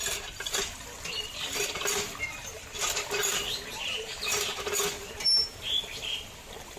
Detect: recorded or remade remade